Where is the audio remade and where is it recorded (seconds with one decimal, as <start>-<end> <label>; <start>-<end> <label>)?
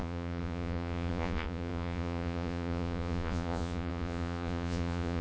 0.0-5.2 remade